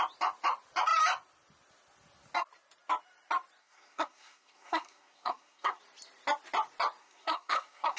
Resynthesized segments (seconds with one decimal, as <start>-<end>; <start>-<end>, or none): 3.6-5.8; 7.0-8.0